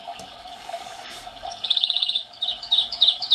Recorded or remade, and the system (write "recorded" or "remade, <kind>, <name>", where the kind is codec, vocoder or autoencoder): remade, codec, DAC